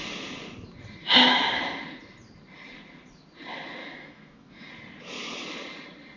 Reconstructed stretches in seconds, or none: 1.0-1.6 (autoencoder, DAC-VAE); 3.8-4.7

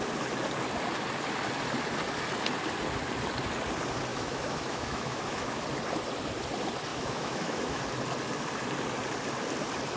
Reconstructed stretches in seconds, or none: 4.1-5.6 (autoencoder, DAC-VAE); 6.9-7.8